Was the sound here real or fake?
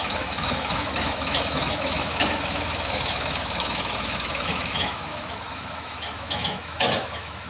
fake